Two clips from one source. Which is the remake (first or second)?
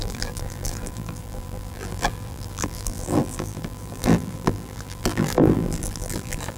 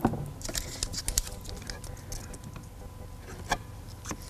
first